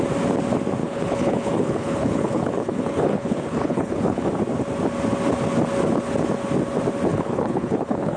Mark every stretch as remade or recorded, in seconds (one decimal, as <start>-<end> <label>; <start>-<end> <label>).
0.0-0.8 recorded; 0.8-4.3 remade; 4.3-7.1 recorded; 7.1-8.2 remade